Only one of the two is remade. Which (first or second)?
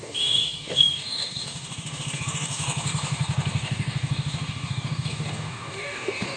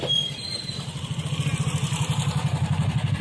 first